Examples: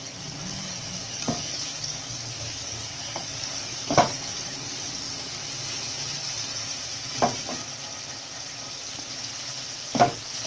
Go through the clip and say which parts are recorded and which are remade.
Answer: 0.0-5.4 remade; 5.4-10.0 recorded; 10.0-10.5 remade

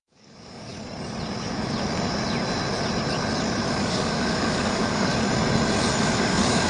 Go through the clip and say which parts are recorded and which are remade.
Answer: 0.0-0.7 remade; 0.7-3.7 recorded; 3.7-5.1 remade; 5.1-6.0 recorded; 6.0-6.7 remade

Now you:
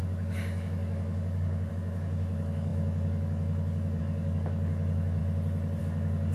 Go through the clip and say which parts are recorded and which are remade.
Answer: 0.0-5.2 remade; 5.2-5.8 recorded; 5.8-6.3 remade

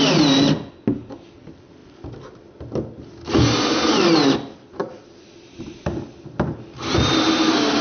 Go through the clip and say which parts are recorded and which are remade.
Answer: 0.0-7.8 recorded